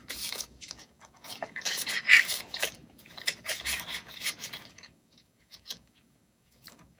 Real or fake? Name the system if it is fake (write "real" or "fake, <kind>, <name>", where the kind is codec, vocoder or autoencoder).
fake, codec, DAC